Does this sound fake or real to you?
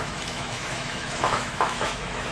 fake